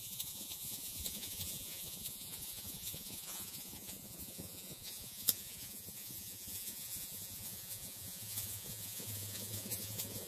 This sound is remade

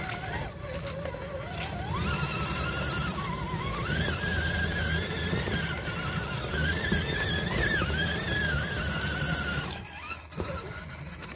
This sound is recorded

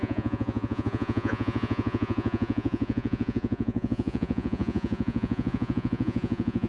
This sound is remade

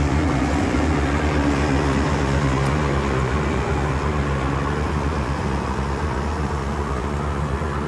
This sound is remade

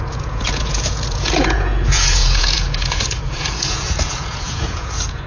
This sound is remade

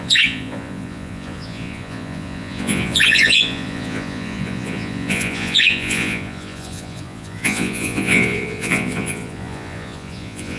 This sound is remade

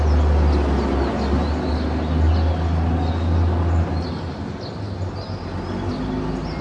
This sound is recorded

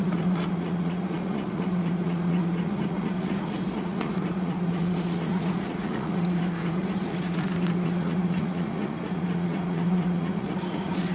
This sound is remade